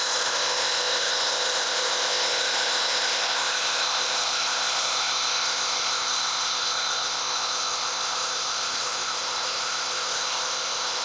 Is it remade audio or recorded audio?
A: remade